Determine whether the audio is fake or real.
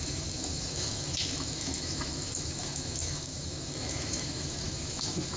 fake